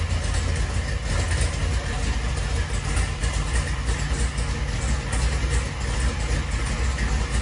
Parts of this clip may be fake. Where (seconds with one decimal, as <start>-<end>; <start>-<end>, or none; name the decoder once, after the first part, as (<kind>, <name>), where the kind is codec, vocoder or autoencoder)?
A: none